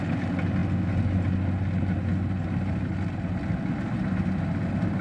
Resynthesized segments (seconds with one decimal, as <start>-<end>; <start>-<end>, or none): none